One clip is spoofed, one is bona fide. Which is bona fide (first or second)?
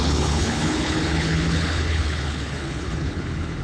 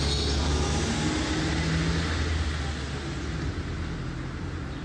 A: second